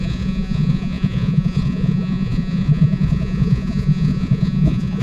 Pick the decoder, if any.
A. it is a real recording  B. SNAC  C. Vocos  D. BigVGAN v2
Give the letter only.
C